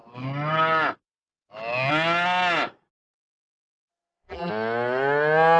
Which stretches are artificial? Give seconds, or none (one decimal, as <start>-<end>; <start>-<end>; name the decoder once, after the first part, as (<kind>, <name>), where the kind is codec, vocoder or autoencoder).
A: 3.9-4.5 (vocoder, BigVGAN v2)